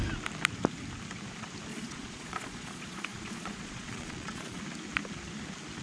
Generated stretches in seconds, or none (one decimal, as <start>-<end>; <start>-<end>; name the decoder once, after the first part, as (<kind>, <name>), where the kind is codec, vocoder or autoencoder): 1.7-4.6 (vocoder, Vocos)